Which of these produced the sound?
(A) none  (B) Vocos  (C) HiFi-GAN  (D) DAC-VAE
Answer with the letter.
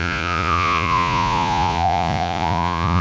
B